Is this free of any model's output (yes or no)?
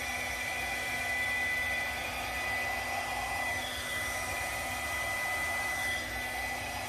yes